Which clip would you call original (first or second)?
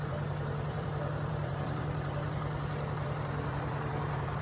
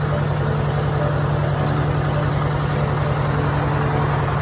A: second